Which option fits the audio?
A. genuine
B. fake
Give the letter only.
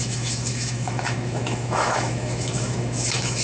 B